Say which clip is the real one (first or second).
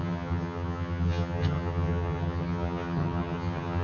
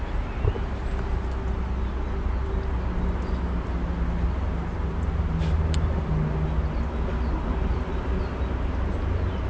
second